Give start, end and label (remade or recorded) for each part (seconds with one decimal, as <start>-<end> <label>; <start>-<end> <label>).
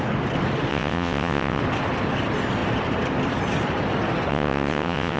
0.0-0.7 recorded; 0.7-1.6 remade; 1.6-4.3 recorded; 4.3-5.2 remade